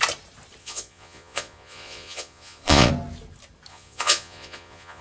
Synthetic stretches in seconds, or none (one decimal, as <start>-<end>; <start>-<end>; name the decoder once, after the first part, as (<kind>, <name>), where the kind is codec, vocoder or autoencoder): 0.6-2.9 (vocoder, Vocos); 3.7-5.0